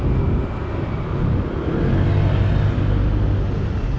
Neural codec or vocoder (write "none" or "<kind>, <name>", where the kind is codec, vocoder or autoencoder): none